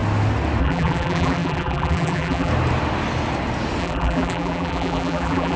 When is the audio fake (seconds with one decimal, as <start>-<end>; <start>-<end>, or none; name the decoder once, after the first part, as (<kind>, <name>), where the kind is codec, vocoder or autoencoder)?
0.6-2.5 (vocoder, BigVGAN v2); 3.8-5.6